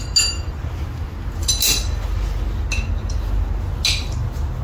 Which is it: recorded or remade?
recorded